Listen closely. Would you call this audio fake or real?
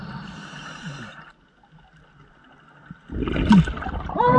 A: real